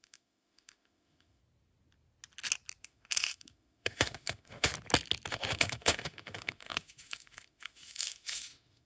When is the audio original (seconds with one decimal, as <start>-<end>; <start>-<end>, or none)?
1.4-2.8; 4.7-5.3